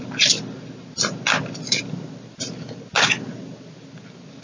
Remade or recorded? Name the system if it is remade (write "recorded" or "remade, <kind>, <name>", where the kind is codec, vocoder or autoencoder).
recorded